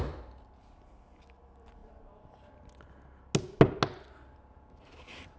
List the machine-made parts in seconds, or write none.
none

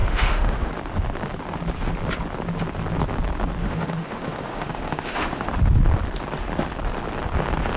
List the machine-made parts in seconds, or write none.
0.0-0.7 (autoencoder, DAC-VAE); 3.6-5.5